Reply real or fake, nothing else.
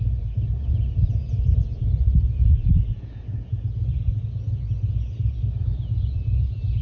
fake